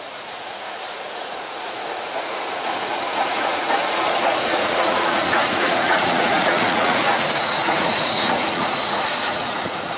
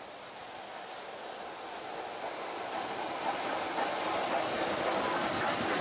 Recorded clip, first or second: second